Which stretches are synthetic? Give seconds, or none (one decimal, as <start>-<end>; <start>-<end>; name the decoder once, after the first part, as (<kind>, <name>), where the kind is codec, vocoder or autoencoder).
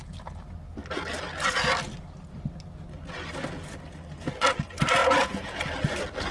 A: 5.0-5.6 (vocoder, Vocos)